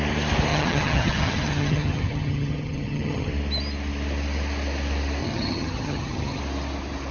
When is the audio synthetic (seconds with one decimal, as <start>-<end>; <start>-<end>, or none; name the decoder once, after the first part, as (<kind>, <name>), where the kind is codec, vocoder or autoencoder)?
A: 0.5-3.3 (vocoder, HiFi-GAN); 5.2-6.4